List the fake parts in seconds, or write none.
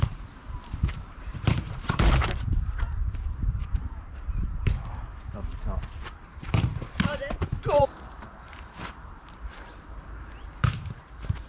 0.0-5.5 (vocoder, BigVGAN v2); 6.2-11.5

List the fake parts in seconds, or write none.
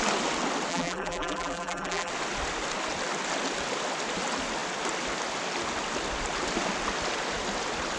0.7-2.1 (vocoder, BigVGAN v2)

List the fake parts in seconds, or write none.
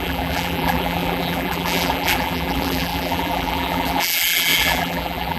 0.0-5.4 (vocoder, BigVGAN v2)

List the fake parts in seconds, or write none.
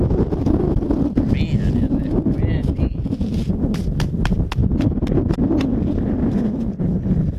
none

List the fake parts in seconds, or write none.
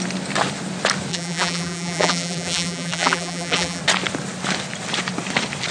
1.1-3.8 (vocoder, BigVGAN v2)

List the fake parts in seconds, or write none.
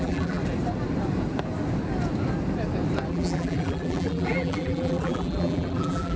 0.0-0.4 (vocoder, BigVGAN v2); 3.1-6.2